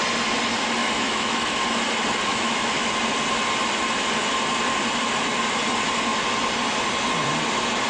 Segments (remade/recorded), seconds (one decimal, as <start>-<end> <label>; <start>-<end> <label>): 0.0-0.8 recorded; 0.8-1.6 remade; 1.6-2.3 recorded; 2.3-2.9 remade; 2.9-7.9 recorded